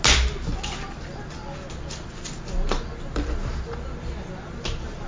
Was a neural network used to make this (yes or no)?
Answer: no